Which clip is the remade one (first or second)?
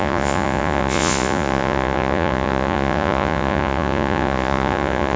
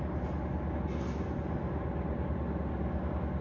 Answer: first